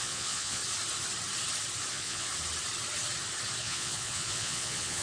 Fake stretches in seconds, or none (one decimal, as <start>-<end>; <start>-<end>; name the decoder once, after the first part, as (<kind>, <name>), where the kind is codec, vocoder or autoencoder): 0.0-0.6 (vocoder, Vocos); 1.9-2.3; 3.6-5.0